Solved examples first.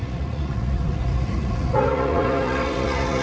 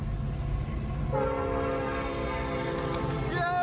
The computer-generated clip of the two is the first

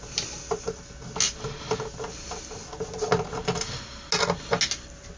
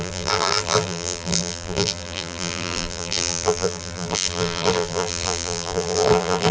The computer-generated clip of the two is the second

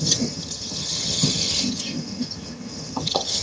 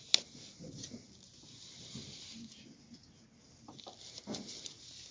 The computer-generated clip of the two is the first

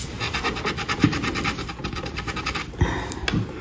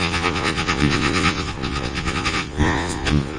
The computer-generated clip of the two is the second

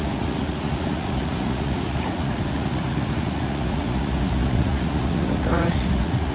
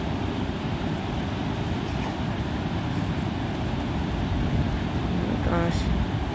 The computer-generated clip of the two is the first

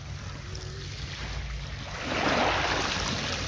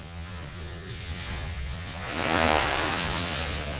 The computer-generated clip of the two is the second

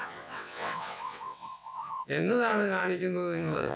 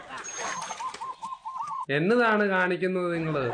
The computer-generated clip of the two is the first